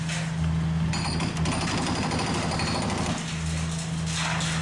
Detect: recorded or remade recorded